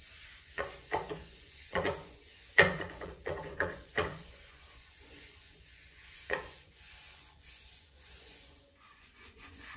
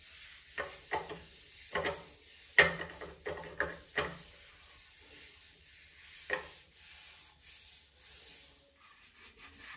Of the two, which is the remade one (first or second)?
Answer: first